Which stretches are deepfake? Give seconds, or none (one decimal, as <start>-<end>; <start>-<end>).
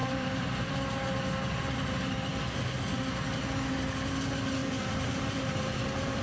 0.0-0.7; 4.6-6.2